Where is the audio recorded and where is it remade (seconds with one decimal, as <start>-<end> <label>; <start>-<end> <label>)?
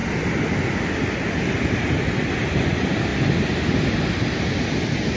0.0-5.2 recorded